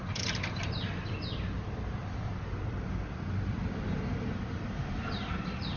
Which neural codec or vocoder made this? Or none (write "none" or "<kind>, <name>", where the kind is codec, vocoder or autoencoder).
none